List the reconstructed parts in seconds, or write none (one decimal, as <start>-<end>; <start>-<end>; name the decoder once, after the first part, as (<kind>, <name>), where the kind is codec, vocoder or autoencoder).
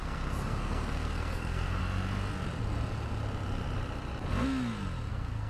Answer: 0.0-1.8 (codec, SNAC); 5.1-5.5